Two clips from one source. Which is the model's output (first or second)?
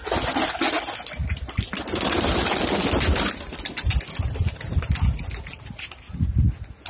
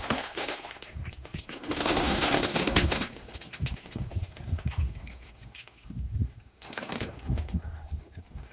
second